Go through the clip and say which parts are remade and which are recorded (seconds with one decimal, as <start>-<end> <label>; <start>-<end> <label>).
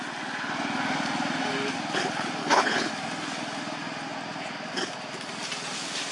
0.0-2.4 recorded; 2.4-2.9 remade; 2.9-6.1 recorded